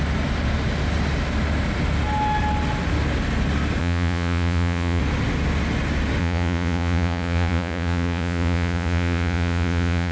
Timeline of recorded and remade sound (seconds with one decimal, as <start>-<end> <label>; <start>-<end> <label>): 0.0-3.8 recorded; 3.8-5.0 remade; 5.0-6.2 recorded; 6.2-10.1 remade